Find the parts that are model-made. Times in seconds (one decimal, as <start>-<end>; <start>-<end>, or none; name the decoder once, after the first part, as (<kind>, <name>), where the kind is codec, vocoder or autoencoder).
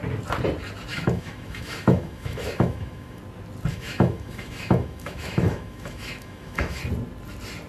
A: 0.9-3.2 (autoencoder, DAC-VAE); 3.7-6.8